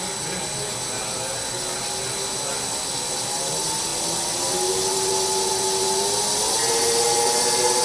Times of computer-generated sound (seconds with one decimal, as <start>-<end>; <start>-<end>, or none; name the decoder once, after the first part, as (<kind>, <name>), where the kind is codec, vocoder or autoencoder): none